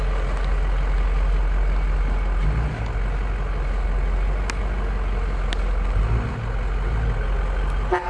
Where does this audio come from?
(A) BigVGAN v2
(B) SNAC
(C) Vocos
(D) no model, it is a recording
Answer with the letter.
D